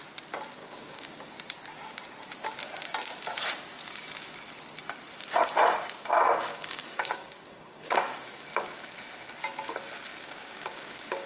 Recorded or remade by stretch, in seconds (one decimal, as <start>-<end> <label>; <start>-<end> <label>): 0.0-0.6 recorded; 0.6-1.3 remade; 1.3-6.5 recorded; 6.5-8.4 remade; 8.4-10.1 recorded; 10.1-11.3 remade